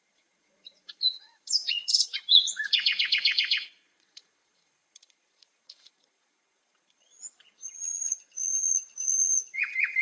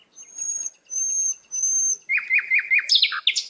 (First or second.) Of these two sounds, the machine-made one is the first